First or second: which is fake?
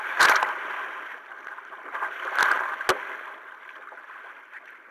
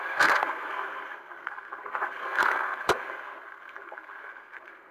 second